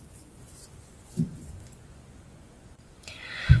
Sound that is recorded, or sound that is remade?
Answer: remade